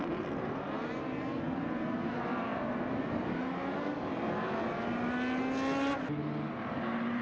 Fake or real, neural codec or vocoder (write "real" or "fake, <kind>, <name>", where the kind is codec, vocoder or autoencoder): real